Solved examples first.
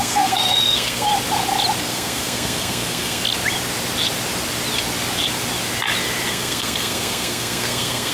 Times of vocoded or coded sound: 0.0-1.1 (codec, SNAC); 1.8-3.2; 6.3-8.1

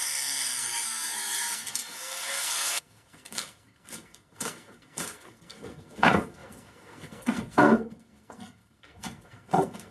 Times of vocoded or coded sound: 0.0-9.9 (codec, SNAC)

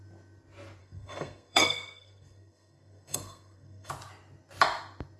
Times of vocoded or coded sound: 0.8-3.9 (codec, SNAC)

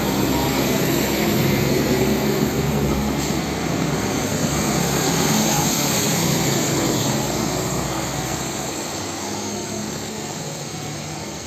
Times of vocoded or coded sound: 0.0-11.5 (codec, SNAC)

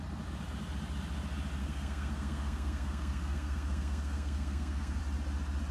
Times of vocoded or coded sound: 1.6-5.0 (codec, SNAC)